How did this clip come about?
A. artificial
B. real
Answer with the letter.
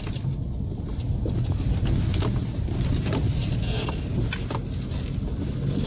B